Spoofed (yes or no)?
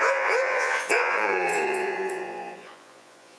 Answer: yes